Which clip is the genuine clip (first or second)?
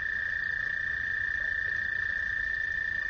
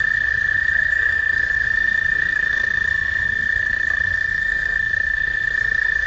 first